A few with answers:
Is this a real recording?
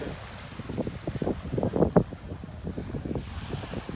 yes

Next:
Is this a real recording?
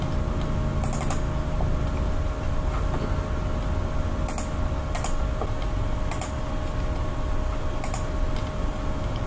yes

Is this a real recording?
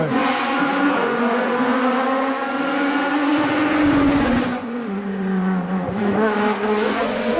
no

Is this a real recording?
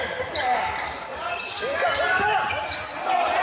yes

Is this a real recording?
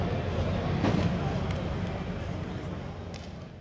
yes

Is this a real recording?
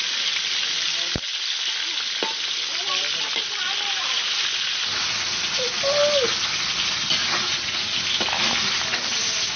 yes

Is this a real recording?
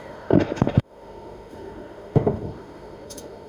no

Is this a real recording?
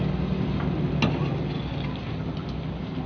yes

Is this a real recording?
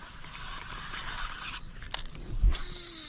yes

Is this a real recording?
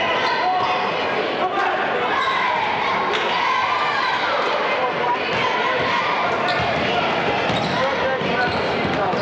yes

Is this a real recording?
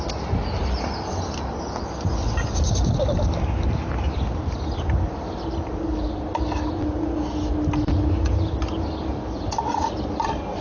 yes